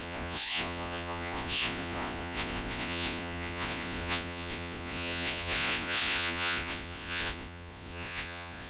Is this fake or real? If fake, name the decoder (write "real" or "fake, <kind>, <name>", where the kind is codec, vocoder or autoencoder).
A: fake, vocoder, Vocos